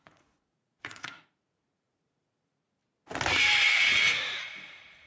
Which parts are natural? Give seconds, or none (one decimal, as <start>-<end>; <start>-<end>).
2.8-3.7